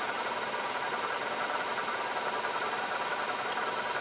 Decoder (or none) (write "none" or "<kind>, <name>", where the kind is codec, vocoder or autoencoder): none